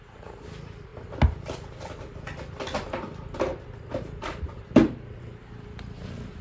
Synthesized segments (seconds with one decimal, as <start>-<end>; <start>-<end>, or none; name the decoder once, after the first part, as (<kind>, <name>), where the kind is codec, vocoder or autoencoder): none